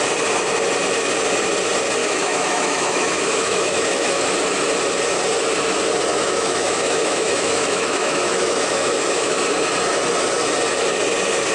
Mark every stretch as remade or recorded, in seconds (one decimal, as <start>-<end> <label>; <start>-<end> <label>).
0.0-2.0 recorded; 2.0-4.3 remade; 4.3-6.1 recorded; 6.1-9.4 remade; 9.4-11.5 recorded

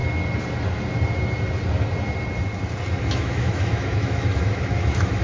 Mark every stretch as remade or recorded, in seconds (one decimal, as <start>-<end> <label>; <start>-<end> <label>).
0.0-3.1 recorded; 3.1-5.2 remade

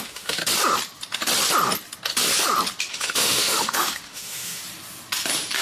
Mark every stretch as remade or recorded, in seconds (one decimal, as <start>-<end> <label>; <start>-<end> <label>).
0.0-0.4 remade; 0.4-2.9 recorded; 2.9-4.6 remade; 4.6-5.6 recorded

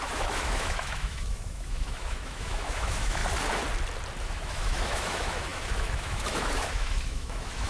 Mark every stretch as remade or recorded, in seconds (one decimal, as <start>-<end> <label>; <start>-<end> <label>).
0.0-3.2 remade; 3.2-4.2 recorded; 4.2-7.7 remade

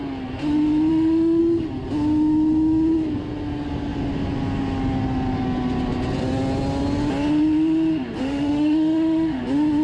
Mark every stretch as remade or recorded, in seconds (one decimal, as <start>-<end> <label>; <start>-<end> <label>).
0.0-0.9 recorded; 0.9-1.4 remade; 1.4-8.2 recorded; 8.2-9.4 remade; 9.4-9.8 recorded

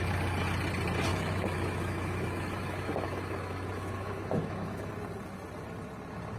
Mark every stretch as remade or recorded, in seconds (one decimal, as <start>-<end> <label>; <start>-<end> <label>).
0.0-1.1 recorded; 1.1-4.9 remade; 4.9-6.4 recorded